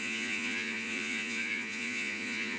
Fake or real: fake